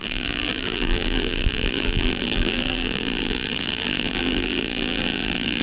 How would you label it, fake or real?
fake